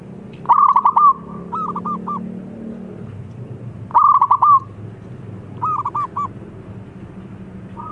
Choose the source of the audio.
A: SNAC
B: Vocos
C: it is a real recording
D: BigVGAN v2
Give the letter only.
C